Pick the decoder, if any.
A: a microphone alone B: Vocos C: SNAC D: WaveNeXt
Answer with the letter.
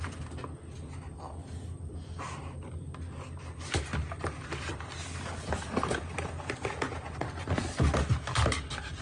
A